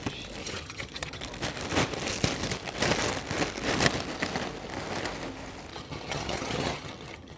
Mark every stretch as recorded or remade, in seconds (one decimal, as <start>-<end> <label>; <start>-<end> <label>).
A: 0.0-0.4 recorded; 0.4-1.2 remade; 1.2-5.7 recorded; 5.7-7.4 remade